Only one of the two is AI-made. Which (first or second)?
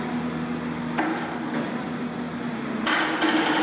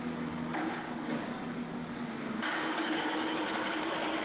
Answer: second